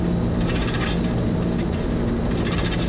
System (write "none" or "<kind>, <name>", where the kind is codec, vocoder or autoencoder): none